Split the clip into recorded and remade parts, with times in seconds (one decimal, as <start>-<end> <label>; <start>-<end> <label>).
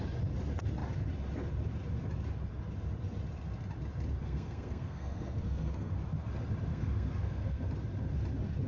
0.0-4.2 recorded; 4.2-5.9 remade; 5.9-6.7 recorded; 6.7-7.7 remade; 7.7-8.7 recorded